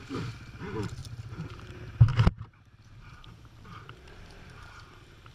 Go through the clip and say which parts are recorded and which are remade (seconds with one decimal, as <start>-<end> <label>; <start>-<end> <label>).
0.0-1.0 recorded; 1.0-1.6 remade; 1.6-2.1 recorded; 2.1-5.3 remade